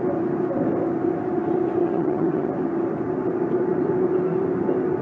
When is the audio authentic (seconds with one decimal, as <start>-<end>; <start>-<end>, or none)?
0.0-1.8; 2.5-5.0